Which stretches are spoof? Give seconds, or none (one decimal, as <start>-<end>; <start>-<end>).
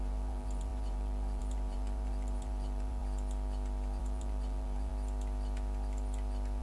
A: 0.0-3.0; 4.0-4.9